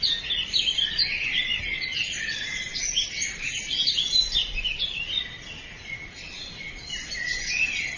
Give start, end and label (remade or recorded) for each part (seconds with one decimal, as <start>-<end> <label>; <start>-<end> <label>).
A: 0.0-8.0 recorded